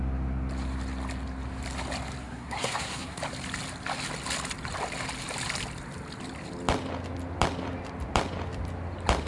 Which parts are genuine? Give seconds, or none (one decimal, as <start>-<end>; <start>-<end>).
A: 0.0-2.2; 3.2-9.3